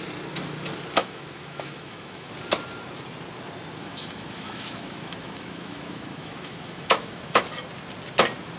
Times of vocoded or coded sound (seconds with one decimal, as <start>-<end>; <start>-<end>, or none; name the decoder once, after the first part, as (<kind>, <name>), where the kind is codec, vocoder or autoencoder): 1.0-2.3 (autoencoder, DAC-VAE); 3.8-7.4